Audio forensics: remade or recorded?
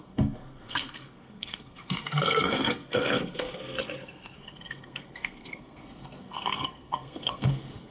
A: remade